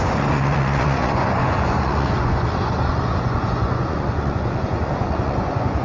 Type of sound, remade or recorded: remade